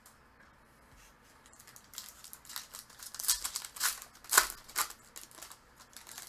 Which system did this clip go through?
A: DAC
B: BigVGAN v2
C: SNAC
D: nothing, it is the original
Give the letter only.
D